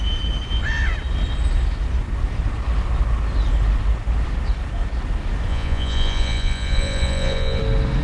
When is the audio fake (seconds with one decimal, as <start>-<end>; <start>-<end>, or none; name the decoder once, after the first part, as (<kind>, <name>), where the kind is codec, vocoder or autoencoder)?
5.5-7.6 (vocoder, Vocos)